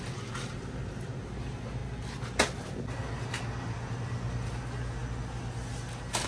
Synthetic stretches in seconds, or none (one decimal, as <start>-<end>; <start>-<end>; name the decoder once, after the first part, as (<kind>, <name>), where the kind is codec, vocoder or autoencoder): none